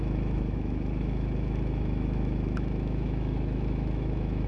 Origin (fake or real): fake